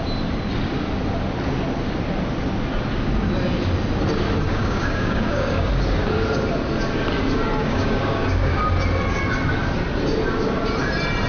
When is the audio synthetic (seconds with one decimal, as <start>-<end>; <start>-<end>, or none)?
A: 4.5-5.7; 7.6-8.6